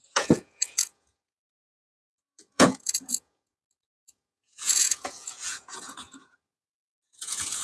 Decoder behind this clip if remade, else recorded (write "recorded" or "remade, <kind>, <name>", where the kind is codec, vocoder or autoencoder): remade, vocoder, Vocos